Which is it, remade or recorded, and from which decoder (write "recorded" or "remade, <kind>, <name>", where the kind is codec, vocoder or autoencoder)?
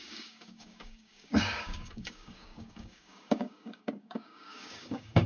remade, codec, DAC